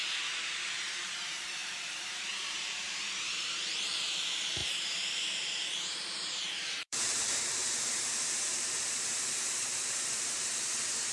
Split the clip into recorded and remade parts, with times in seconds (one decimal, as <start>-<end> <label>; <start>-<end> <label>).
0.0-0.6 recorded; 0.6-11.1 remade

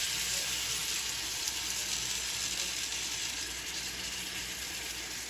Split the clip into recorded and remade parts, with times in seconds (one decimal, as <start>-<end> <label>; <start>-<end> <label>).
0.0-0.8 remade; 0.8-1.4 recorded; 1.4-1.8 remade; 1.8-3.2 recorded; 3.2-5.3 remade

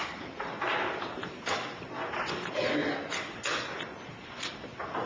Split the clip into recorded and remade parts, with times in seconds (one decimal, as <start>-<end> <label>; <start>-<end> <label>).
0.0-5.1 recorded

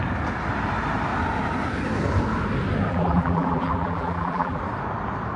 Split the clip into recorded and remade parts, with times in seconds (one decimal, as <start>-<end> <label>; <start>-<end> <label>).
0.0-2.9 recorded; 2.9-4.6 remade; 4.6-5.4 recorded

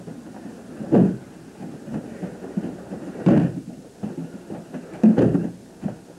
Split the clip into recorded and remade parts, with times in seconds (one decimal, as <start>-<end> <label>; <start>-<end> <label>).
0.0-1.9 recorded; 1.9-3.5 remade; 3.5-6.2 recorded